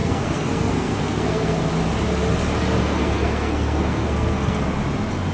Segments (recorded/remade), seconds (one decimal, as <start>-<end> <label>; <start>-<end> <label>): 0.0-1.7 remade; 1.7-2.8 recorded; 2.8-4.7 remade; 4.7-5.3 recorded